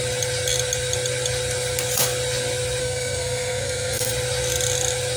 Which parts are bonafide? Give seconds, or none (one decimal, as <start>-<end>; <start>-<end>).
0.0-2.8; 4.1-5.2